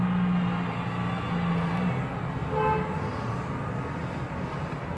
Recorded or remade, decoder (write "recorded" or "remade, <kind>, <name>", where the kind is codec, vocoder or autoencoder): recorded